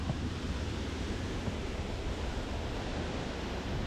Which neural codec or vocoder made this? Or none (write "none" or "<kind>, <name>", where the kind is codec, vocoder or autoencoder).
none